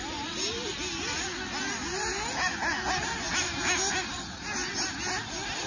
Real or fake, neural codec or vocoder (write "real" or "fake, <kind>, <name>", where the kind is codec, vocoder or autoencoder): real